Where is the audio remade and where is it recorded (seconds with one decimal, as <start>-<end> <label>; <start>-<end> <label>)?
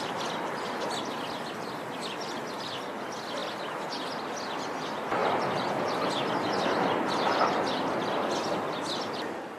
0.0-9.6 recorded